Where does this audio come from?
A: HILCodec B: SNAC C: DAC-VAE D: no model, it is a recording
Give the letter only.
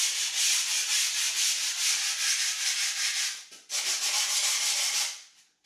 D